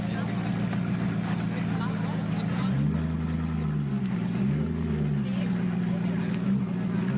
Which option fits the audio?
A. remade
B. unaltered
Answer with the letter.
B